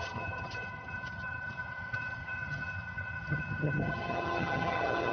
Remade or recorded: remade